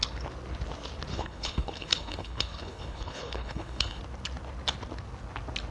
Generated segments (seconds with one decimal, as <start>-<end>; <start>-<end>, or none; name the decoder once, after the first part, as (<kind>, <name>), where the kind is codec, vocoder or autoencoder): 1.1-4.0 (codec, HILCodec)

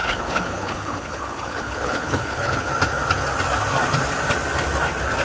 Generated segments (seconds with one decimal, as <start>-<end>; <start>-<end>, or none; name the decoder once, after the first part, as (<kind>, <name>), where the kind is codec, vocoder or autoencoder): 0.0-2.7 (codec, HILCodec)

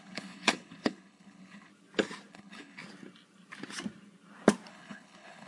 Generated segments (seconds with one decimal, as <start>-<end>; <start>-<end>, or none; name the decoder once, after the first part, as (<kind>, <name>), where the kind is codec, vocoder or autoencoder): 0.0-1.7 (codec, HILCodec); 2.3-2.8; 4.7-5.5

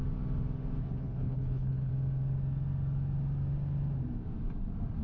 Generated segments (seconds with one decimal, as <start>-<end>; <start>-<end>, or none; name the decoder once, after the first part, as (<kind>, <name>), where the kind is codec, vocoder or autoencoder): 0.8-1.9 (codec, HILCodec)